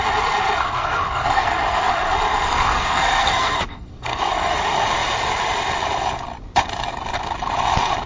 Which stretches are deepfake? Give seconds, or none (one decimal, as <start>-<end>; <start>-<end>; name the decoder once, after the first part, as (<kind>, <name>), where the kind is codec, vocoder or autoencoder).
0.6-1.9 (codec, SNAC); 2.3-4.2